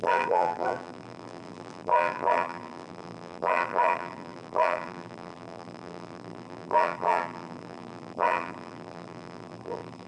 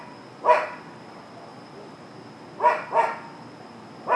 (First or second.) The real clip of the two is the second